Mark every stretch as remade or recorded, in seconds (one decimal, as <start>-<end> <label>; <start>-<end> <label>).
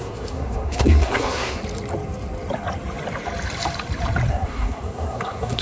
0.0-1.6 remade; 1.6-4.3 recorded; 4.3-5.6 remade